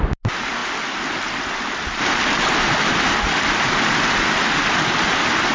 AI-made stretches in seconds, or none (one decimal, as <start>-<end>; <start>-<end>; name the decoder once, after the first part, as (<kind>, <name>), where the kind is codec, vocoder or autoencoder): none